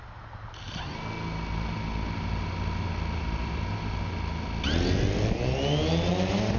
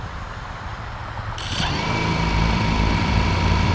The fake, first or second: second